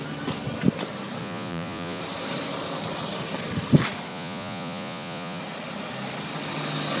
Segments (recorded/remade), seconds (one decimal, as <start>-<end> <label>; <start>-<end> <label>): 0.0-1.2 recorded; 1.2-2.0 remade; 2.0-4.1 recorded; 4.1-5.4 remade; 5.4-7.0 recorded